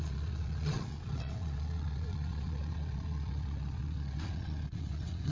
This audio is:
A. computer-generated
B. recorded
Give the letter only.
A